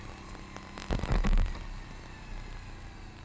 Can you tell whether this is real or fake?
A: real